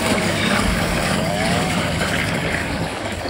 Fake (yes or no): yes